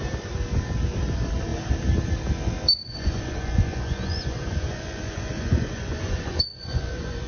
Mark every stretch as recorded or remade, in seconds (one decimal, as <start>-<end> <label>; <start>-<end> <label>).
0.0-2.8 recorded; 2.8-7.3 remade